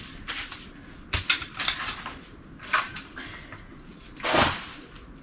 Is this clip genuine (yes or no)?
yes